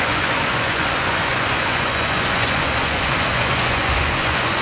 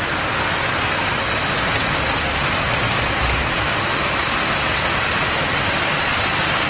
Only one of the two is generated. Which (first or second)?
first